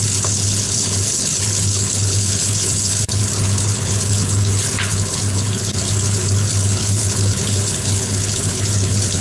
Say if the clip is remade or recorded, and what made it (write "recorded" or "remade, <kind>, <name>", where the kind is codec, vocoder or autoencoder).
remade, codec, HILCodec